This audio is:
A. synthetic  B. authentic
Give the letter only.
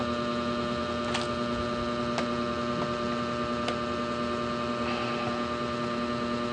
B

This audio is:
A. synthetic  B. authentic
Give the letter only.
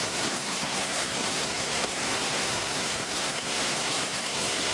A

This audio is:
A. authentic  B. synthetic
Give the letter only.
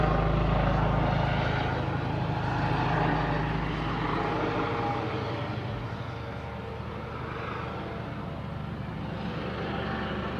A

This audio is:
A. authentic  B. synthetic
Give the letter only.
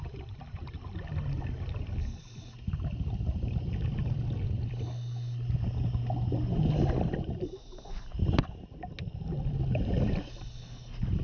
A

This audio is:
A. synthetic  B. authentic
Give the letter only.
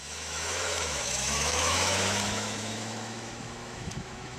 A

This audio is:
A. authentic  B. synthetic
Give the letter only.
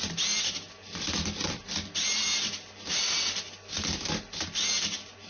A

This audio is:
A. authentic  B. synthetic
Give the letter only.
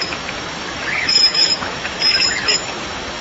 B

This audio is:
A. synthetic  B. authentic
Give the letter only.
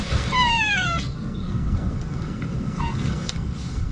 A